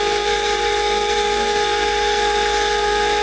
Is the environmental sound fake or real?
fake